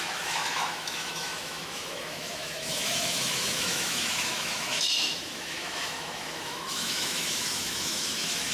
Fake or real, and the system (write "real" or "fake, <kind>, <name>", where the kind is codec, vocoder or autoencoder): fake, autoencoder, DAC-VAE